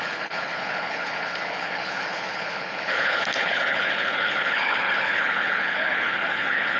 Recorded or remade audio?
remade